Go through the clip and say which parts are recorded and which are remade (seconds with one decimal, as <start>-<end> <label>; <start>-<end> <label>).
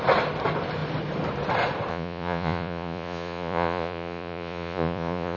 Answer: 0.0-1.9 recorded; 1.9-5.4 remade